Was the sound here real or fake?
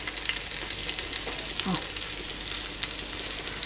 real